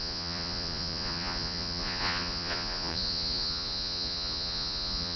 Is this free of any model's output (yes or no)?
no